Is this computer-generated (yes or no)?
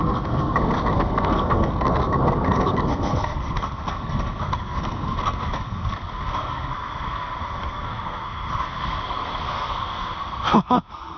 yes